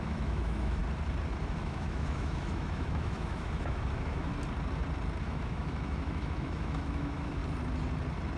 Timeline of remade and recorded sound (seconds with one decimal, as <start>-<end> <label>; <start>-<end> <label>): 0.0-0.8 remade; 0.8-1.4 recorded; 1.4-4.3 remade; 4.3-5.2 recorded; 5.2-7.4 remade; 7.4-8.4 recorded